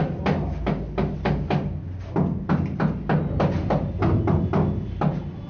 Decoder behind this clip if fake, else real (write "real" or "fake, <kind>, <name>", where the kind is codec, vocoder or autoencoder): real